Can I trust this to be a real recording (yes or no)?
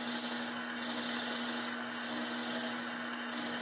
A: yes